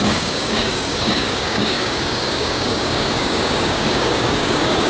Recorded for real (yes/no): no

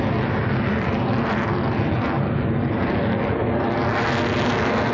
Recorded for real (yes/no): yes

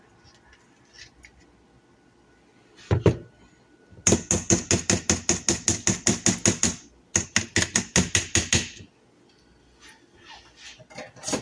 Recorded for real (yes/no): yes